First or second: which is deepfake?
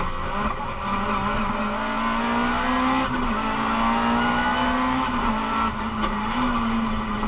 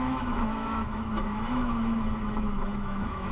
second